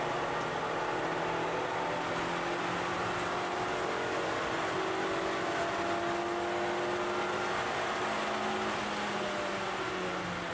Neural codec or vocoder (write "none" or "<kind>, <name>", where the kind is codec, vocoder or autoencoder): none